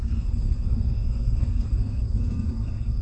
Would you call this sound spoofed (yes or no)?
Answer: yes